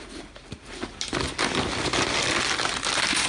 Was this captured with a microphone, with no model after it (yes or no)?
yes